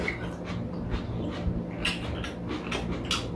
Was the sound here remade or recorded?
recorded